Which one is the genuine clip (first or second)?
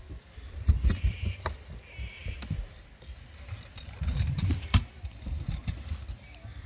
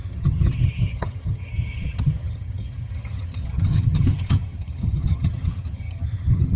first